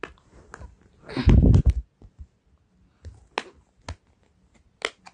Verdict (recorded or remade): recorded